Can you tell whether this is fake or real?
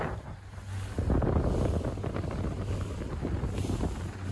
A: real